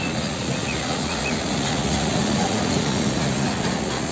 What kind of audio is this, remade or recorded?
remade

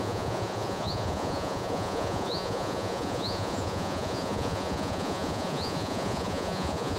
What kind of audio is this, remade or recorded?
remade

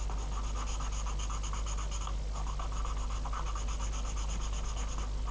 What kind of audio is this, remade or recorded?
recorded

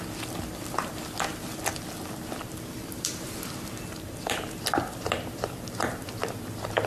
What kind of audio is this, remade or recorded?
remade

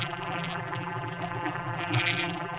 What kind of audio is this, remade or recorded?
remade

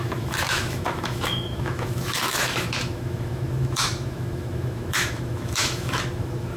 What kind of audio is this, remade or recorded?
remade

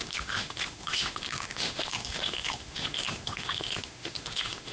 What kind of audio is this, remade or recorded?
remade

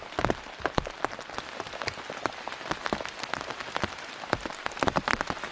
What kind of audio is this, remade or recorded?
recorded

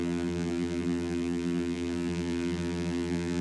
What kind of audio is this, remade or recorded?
remade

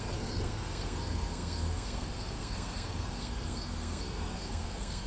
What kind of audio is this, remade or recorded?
remade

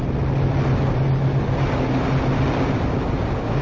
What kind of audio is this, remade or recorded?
recorded